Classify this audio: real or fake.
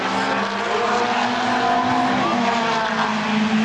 real